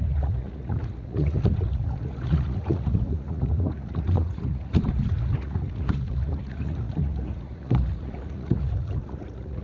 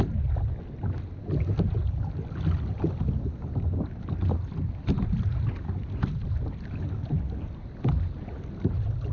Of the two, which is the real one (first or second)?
second